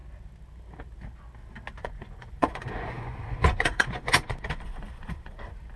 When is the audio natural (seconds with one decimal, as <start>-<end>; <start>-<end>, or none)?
0.0-1.8; 5.3-5.8